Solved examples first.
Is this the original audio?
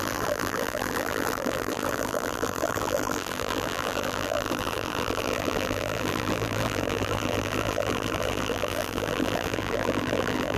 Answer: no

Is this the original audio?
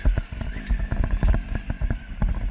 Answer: yes